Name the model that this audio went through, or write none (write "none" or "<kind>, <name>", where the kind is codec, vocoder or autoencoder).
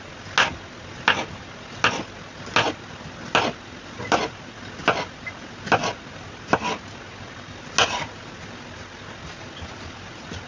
none